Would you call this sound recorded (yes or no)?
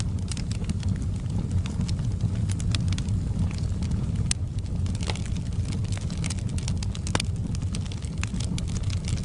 yes